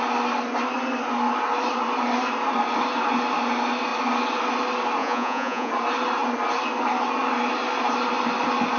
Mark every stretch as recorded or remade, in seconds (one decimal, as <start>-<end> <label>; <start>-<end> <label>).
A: 0.0-5.0 recorded; 5.0-5.7 remade; 5.7-8.8 recorded